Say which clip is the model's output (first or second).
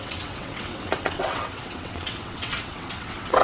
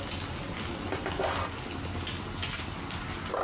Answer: first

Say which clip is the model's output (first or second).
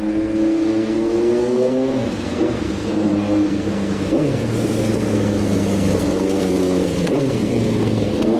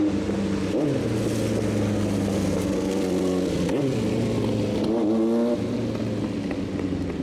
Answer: first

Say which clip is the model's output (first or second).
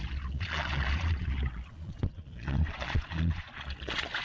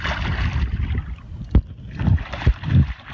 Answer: first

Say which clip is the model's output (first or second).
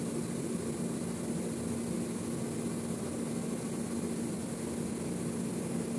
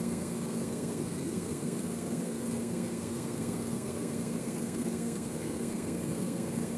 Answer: second